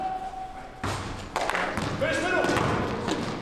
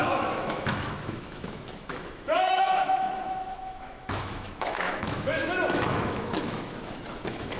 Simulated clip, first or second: second